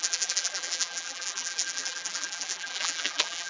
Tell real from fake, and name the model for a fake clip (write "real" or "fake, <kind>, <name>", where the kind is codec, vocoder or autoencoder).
fake, vocoder, BigVGAN v2